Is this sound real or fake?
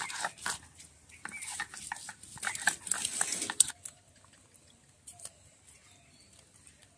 real